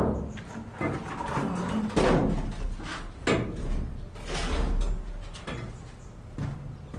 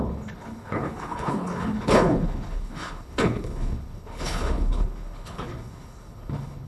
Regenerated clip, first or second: second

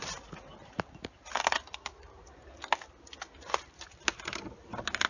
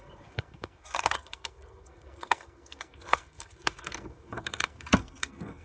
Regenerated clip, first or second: second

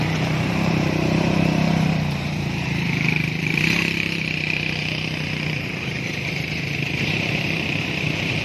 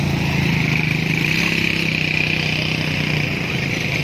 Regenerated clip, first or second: first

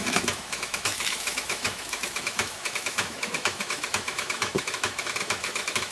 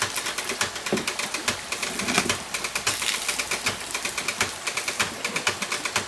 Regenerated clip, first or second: first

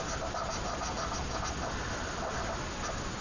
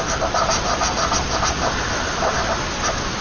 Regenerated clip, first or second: second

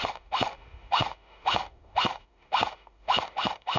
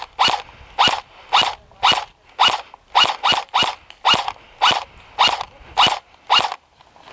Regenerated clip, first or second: first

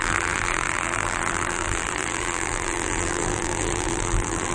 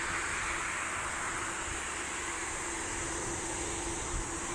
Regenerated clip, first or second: first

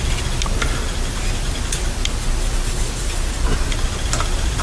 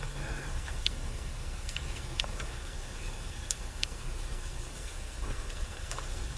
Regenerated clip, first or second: second